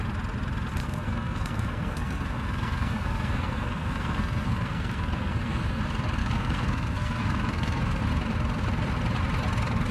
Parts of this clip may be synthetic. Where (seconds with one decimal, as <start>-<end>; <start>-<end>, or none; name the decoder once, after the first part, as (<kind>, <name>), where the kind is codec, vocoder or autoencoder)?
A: 0.8-5.8 (codec, SNAC); 6.2-8.0

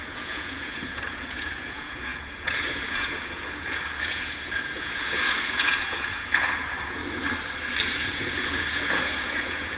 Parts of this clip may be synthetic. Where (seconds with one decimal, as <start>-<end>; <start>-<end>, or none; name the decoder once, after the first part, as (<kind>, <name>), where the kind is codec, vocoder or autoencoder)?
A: 0.0-7.0 (vocoder, Vocos); 8.1-9.8

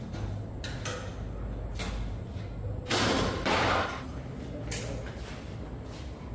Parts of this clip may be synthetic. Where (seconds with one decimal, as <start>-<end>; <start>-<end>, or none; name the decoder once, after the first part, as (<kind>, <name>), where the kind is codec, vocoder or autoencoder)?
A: none

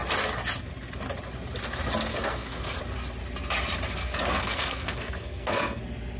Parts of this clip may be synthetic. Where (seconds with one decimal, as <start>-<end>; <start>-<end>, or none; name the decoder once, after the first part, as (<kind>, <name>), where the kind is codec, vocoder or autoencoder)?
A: 2.1-2.8 (codec, SNAC); 4.0-5.8

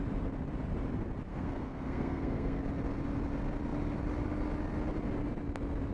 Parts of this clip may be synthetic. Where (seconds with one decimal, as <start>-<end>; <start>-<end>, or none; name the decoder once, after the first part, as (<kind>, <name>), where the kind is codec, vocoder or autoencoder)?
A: 1.3-2.6 (codec, SNAC)